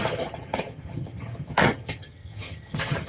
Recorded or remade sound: remade